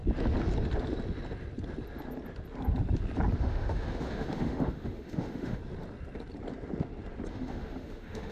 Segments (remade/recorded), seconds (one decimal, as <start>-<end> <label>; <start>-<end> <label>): 0.0-3.4 recorded; 3.4-5.6 remade; 5.6-7.3 recorded; 7.3-8.3 remade